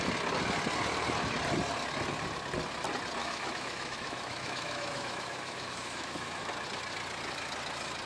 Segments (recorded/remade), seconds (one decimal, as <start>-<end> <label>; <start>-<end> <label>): 0.0-3.2 recorded; 3.2-6.5 remade; 6.5-8.1 recorded